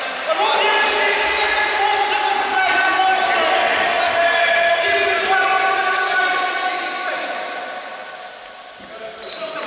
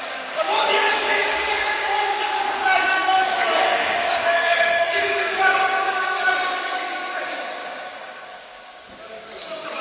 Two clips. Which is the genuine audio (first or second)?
first